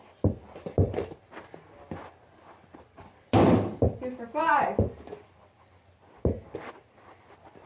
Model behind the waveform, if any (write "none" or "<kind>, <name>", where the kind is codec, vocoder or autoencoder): vocoder, BigVGAN v2